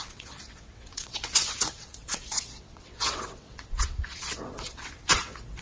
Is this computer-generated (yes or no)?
yes